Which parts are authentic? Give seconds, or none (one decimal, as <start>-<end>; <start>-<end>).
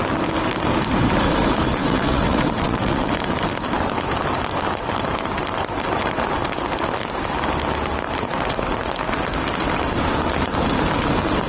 0.0-1.8; 3.1-11.5